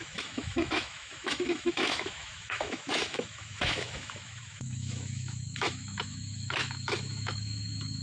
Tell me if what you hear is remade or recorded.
remade